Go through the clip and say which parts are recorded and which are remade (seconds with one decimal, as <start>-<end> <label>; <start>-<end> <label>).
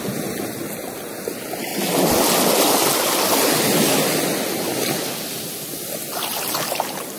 0.0-7.2 recorded